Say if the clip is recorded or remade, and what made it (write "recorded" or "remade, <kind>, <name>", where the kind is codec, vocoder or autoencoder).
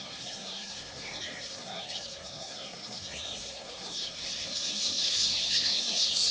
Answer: remade, codec, SNAC